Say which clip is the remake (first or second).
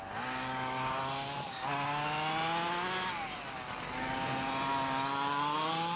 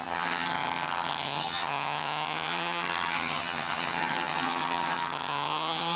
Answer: second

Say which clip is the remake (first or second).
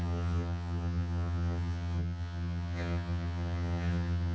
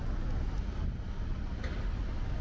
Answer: first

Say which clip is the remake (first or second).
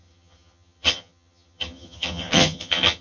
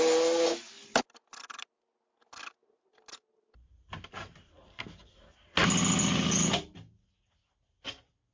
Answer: first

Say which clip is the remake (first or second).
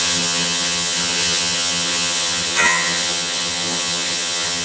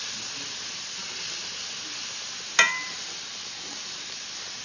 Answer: first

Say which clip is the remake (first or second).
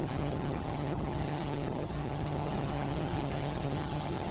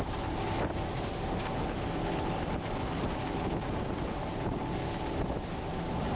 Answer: first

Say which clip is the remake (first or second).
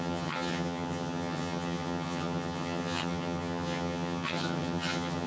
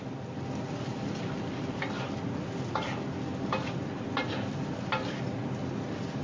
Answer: first